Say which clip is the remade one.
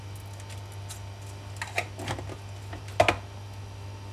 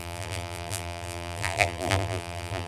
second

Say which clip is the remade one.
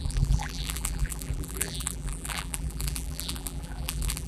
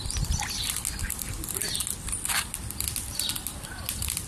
first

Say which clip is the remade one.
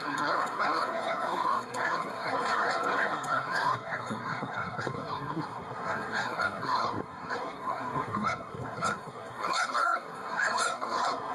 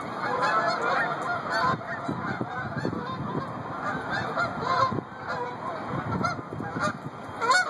first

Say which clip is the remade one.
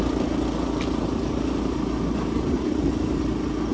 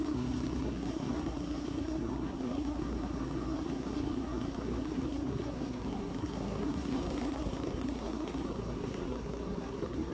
second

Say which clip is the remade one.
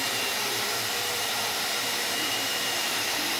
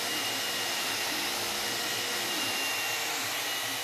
first